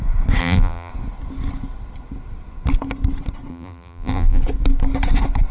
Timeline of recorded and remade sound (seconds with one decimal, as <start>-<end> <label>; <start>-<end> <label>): 0.0-0.4 recorded; 0.4-0.9 remade; 0.9-3.5 recorded; 3.5-4.4 remade; 4.4-5.5 recorded